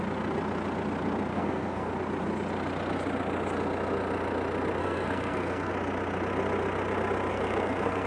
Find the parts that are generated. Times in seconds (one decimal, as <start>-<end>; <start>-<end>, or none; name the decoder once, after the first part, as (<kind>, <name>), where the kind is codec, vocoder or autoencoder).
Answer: 1.3-1.9 (codec, SNAC); 4.8-5.7; 7.3-8.1